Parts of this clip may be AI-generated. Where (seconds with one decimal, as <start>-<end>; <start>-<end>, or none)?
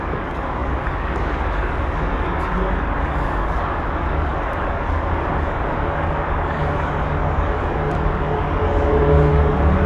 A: 0.0-9.9